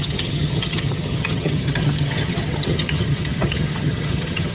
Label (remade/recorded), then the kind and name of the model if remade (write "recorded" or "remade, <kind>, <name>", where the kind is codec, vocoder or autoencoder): remade, vocoder, HiFi-GAN